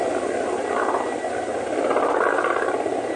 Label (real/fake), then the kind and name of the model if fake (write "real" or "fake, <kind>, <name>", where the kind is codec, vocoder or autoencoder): real